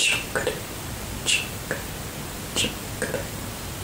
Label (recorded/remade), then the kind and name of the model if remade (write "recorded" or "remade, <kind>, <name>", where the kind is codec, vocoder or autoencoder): remade, vocoder, BigVGAN v2